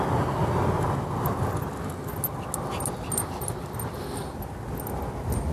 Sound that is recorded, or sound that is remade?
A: recorded